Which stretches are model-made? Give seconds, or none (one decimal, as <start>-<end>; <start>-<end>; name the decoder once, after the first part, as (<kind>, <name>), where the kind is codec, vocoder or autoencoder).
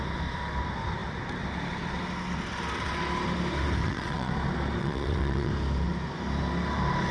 3.8-4.3 (vocoder, WaveNeXt); 4.8-5.5